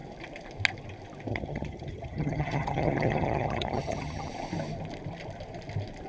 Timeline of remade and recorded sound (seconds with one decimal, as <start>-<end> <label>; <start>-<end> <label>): 0.0-1.3 recorded; 1.3-4.3 remade; 4.3-6.1 recorded